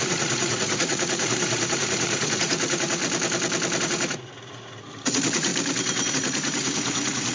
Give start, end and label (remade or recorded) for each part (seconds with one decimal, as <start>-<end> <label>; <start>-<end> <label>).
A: 0.0-3.0 remade; 3.0-3.8 recorded; 3.8-5.5 remade; 5.5-6.1 recorded; 6.1-7.3 remade